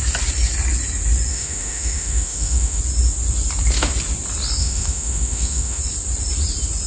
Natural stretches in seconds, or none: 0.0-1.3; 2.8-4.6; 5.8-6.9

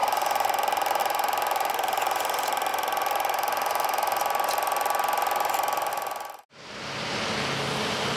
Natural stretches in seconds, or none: 0.0-8.2

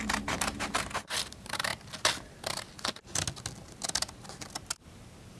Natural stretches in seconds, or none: 1.7-4.9

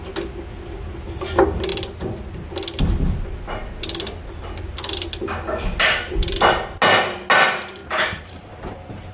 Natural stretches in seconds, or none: 0.0-7.8

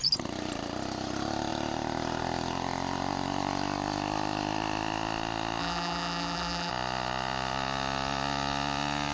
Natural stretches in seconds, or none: 0.0-5.6; 6.7-9.1

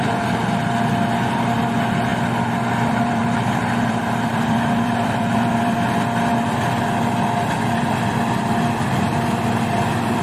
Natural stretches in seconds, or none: 2.1-2.7; 6.3-7.5